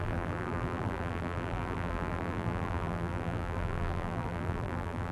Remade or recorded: remade